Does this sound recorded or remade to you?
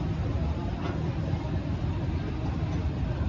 recorded